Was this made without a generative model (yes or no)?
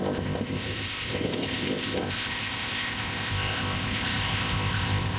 no